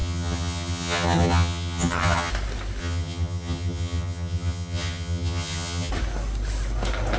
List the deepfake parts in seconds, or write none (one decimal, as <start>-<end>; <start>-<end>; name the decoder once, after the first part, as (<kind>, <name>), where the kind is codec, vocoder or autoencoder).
0.0-2.3 (vocoder, HiFi-GAN); 2.8-5.9